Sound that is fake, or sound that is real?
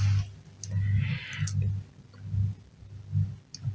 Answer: real